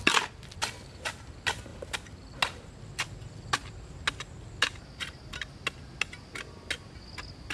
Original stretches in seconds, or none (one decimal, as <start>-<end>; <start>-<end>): 0.0-7.5